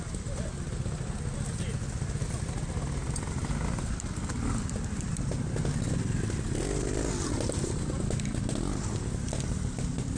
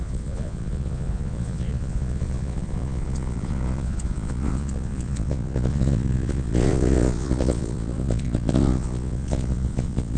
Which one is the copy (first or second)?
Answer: second